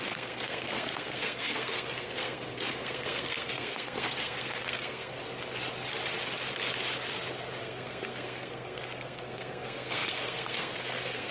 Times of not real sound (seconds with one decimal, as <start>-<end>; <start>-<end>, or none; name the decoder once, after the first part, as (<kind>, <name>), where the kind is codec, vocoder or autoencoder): 0.0-5.2 (codec, SNAC); 7.6-11.3